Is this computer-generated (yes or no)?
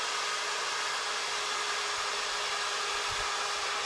no